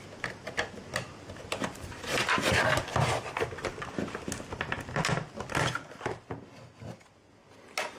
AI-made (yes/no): no